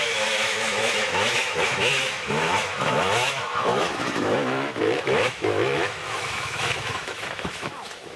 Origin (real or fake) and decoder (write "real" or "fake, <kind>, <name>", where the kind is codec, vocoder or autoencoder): fake, autoencoder, DAC-VAE